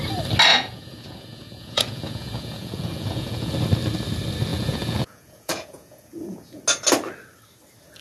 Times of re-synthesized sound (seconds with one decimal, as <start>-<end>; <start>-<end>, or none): 0.5-3.5; 4.5-6.6